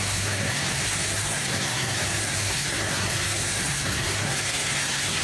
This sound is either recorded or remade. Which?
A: remade